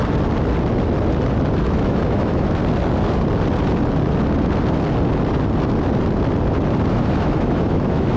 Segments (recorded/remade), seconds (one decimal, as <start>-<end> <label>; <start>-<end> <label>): 0.0-1.6 recorded; 1.6-2.6 remade; 2.6-6.9 recorded; 6.9-8.2 remade